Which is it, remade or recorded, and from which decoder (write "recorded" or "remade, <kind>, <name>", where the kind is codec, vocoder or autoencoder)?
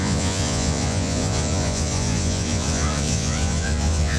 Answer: remade, vocoder, Vocos